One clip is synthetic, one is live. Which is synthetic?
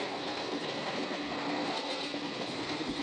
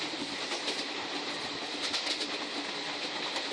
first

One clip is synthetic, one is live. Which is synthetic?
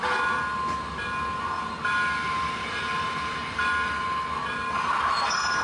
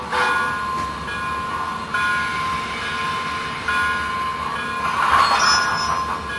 first